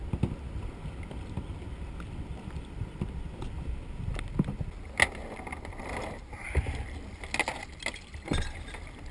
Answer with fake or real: real